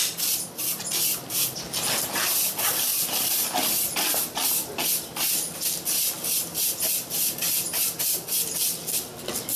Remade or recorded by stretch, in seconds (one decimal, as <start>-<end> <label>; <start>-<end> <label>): 0.0-9.6 recorded